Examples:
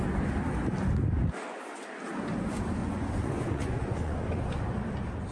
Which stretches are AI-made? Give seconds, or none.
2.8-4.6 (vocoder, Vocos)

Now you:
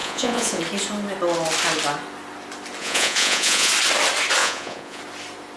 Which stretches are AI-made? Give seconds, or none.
0.0-0.6 (vocoder, Vocos); 2.8-3.7; 4.4-5.0

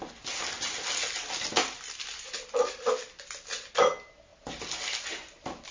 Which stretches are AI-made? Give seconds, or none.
none